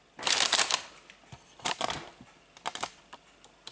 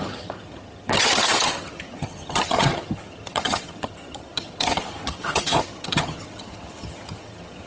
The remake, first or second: second